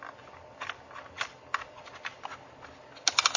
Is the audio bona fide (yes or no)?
yes